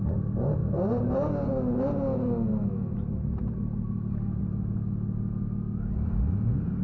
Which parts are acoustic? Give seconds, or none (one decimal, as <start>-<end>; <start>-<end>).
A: 0.0-6.8